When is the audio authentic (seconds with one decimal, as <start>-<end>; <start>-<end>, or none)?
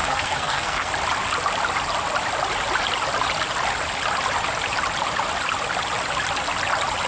0.9-7.1